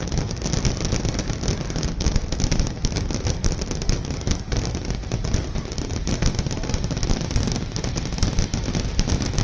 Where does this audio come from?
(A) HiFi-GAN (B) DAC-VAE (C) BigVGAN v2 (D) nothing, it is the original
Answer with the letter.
C